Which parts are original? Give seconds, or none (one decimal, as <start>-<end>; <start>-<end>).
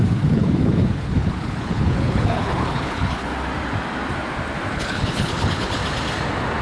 3.3-4.7; 5.8-6.6